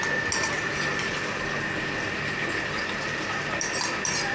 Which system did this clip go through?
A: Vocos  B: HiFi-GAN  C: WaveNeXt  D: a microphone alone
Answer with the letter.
D